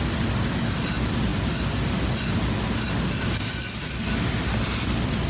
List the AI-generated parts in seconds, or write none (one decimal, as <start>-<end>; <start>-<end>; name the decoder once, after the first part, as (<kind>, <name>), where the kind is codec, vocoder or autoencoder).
none